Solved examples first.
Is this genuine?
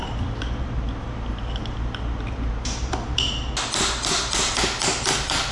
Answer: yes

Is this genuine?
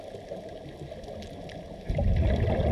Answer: yes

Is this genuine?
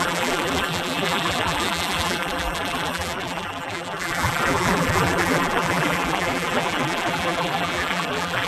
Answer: no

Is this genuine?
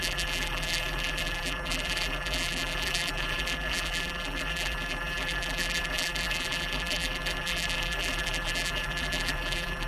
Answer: no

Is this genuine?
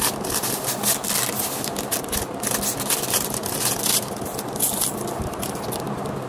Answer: yes